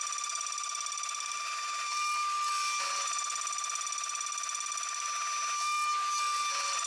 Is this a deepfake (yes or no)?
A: no